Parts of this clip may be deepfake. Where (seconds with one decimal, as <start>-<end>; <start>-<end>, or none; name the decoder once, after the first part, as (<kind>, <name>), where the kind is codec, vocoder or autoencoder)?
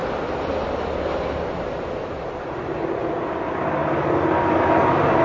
none